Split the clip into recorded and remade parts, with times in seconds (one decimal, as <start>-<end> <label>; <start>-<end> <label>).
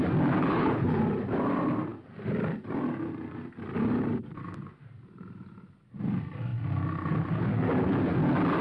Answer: 0.0-0.4 recorded; 0.4-1.0 remade; 1.0-8.6 recorded